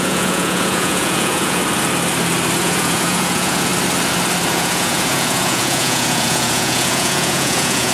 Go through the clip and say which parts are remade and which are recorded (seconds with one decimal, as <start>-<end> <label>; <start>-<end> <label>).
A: 0.0-1.6 remade; 1.6-2.6 recorded; 2.6-3.7 remade; 3.7-4.5 recorded; 4.5-7.9 remade